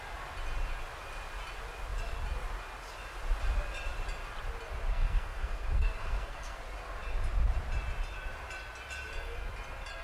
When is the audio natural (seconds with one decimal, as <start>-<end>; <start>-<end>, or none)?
0.0-4.9; 6.6-10.0